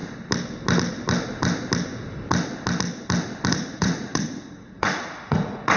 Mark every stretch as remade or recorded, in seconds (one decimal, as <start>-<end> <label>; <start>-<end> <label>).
0.0-3.5 recorded; 3.5-5.8 remade